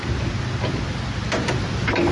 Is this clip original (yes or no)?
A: yes